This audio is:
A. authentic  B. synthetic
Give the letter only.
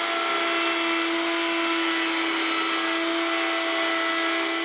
A